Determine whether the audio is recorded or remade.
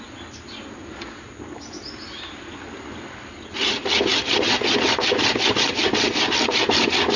recorded